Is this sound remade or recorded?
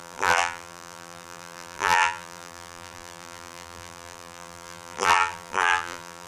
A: remade